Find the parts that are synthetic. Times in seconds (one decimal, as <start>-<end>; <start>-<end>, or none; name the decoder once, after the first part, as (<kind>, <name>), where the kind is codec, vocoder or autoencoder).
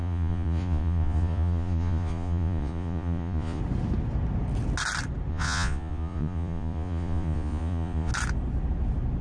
0.0-3.6 (vocoder, Vocos); 5.3-8.1